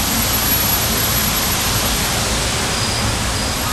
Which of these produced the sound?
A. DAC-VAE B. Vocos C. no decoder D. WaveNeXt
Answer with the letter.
C